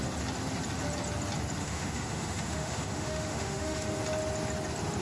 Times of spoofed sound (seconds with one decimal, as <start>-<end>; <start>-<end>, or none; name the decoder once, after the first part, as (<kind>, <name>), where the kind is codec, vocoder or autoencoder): 1.6-4.0 (autoencoder, DAC-VAE)